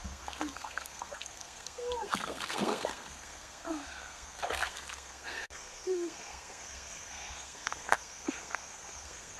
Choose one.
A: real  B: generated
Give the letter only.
B